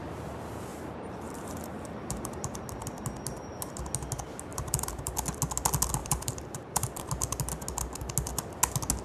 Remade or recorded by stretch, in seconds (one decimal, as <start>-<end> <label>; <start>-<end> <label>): 0.0-0.7 recorded; 0.7-2.6 remade; 2.6-4.5 recorded; 4.5-5.1 remade; 5.1-6.0 recorded; 6.0-7.1 remade; 7.1-9.0 recorded